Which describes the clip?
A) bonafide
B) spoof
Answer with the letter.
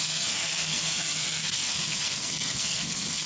B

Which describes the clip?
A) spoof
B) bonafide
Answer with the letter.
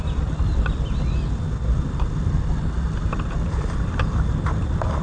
A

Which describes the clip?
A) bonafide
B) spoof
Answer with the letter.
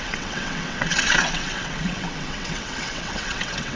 B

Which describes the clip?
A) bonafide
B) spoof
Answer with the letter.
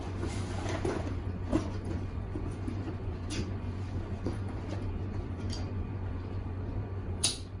B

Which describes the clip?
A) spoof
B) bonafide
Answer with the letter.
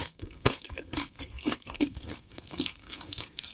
A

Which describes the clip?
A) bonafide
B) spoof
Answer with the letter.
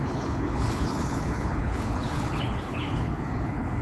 B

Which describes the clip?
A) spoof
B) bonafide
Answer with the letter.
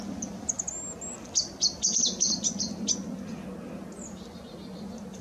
B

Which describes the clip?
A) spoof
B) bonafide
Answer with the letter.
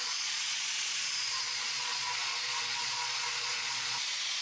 A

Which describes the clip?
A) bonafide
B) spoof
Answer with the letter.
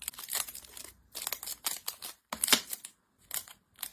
A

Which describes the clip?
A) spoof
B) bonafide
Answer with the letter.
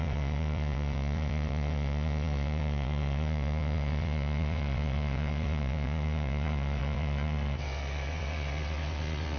A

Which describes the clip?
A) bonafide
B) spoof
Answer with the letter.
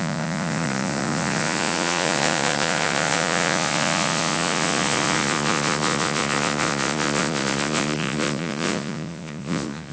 B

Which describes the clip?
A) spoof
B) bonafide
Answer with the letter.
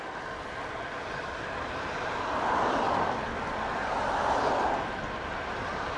B